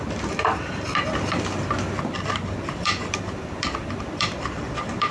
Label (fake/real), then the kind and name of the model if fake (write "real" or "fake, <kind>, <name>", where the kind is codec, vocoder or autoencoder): fake, vocoder, BigVGAN v2